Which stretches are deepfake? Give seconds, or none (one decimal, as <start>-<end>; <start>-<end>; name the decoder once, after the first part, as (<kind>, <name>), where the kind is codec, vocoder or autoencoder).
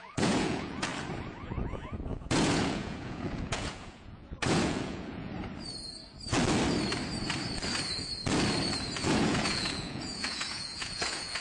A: 0.0-0.9 (vocoder, Vocos); 1.4-5.3; 9.0-11.4